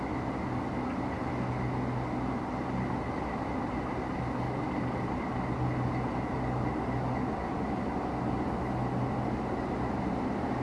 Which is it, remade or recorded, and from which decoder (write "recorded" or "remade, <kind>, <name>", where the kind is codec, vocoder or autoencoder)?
recorded